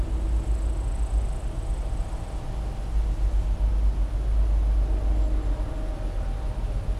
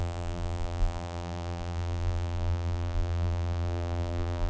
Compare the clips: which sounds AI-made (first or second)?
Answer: second